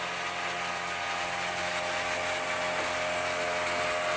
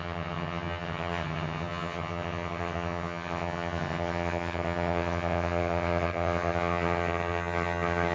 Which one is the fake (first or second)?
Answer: second